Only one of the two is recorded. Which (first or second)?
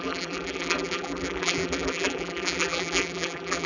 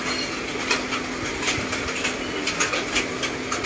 second